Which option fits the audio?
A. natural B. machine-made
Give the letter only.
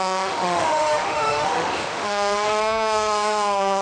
B